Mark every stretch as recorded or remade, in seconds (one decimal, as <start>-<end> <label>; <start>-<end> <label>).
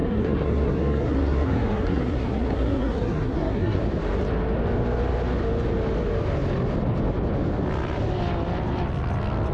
0.0-3.8 remade; 3.8-9.5 recorded